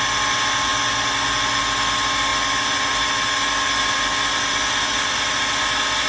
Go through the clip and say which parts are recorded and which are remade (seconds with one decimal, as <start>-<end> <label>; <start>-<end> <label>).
0.0-6.1 recorded